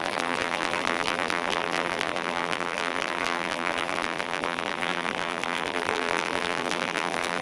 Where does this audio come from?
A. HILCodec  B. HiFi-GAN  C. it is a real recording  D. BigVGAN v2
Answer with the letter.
D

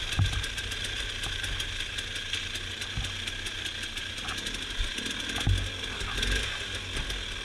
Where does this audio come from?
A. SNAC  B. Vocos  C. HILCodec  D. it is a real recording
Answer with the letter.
D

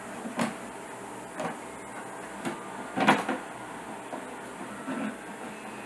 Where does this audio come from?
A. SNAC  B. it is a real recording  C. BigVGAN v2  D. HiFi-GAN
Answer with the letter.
B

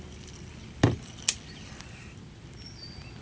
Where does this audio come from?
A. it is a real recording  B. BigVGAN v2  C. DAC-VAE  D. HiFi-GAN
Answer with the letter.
A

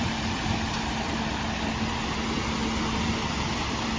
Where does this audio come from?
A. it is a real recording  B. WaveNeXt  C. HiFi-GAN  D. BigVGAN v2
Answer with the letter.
A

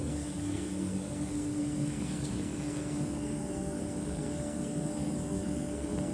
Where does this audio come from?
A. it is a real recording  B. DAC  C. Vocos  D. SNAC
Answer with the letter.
D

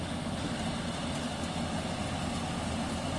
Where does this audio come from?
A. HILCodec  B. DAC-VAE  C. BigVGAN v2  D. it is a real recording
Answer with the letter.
D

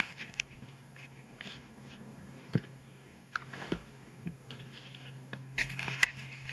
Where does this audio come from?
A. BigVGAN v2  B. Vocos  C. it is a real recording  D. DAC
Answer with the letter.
D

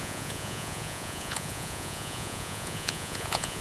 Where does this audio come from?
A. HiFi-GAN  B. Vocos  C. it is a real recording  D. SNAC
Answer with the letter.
B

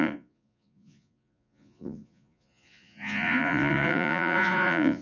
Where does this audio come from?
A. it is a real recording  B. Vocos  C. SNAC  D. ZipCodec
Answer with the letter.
B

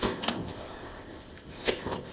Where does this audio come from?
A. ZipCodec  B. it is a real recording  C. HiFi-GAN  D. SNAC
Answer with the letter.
A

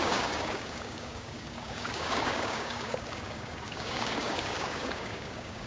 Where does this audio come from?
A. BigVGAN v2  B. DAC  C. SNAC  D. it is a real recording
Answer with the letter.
B